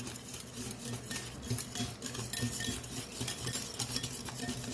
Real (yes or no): yes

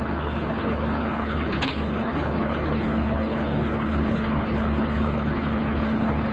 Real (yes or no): no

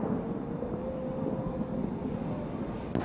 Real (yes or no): yes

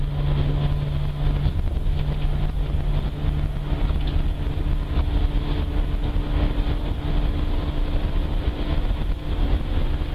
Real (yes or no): yes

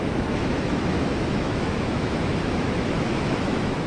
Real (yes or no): no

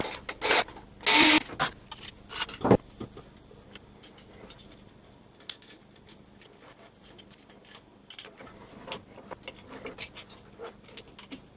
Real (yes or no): yes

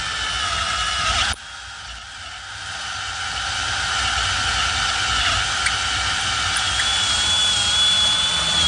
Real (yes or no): yes